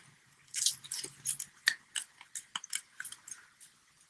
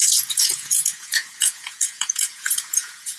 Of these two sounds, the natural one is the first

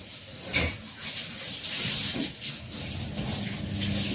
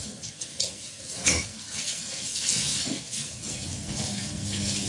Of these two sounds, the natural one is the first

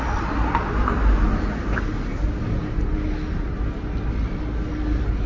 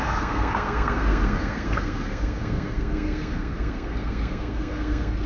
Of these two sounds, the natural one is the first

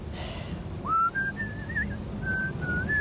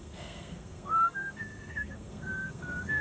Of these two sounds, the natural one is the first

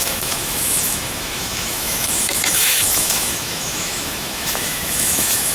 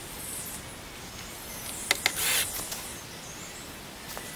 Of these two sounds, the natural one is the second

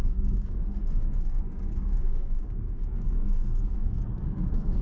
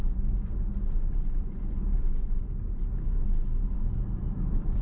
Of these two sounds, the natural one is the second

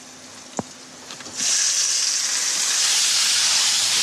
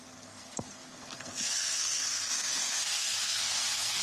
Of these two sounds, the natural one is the first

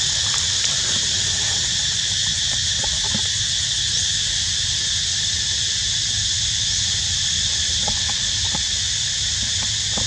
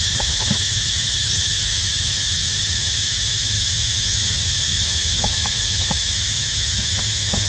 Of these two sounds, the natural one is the first